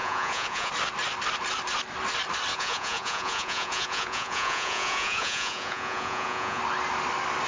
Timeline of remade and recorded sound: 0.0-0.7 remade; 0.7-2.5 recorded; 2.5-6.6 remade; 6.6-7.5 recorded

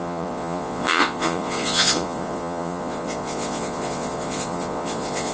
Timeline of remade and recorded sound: 0.0-5.3 remade

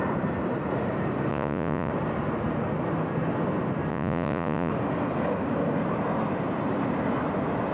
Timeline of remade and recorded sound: 0.0-1.3 recorded; 1.3-1.9 remade; 1.9-3.9 recorded; 3.9-4.7 remade; 4.7-7.7 recorded

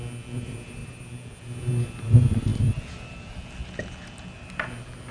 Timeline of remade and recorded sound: 0.0-5.1 recorded